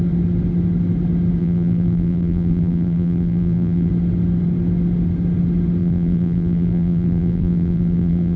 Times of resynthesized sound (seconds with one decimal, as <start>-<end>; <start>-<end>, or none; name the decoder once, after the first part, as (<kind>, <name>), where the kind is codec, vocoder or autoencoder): 1.4-3.9 (vocoder, BigVGAN v2); 5.8-8.4